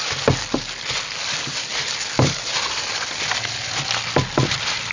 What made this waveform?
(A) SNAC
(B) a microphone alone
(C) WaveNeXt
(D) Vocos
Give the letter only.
B